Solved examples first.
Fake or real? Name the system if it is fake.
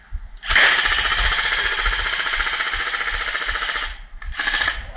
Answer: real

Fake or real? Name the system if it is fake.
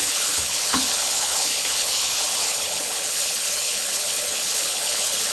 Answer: fake, codec, HILCodec